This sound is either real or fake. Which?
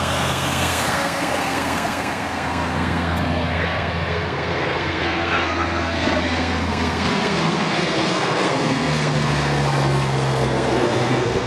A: fake